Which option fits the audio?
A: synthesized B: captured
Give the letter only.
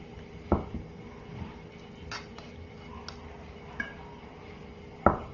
B